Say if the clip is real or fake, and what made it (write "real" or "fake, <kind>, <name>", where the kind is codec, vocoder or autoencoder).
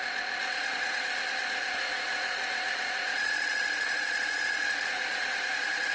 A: fake, vocoder, Vocos